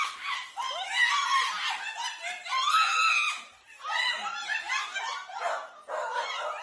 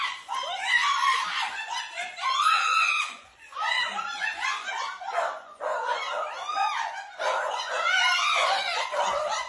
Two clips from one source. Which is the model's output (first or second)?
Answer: second